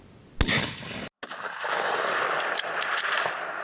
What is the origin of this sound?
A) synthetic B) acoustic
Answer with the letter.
B